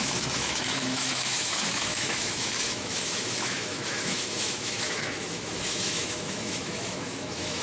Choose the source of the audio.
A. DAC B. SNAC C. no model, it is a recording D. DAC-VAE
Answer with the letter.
D